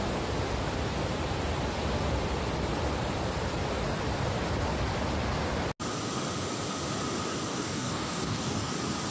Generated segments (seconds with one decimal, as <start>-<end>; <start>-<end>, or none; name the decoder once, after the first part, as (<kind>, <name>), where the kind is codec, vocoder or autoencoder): 7.5-8.7 (codec, DAC)